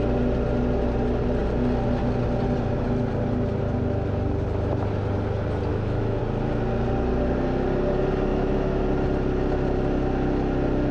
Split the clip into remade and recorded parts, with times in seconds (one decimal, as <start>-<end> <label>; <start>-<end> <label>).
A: 0.0-5.7 recorded; 5.7-6.2 remade; 6.2-8.3 recorded; 8.3-8.8 remade; 8.8-10.9 recorded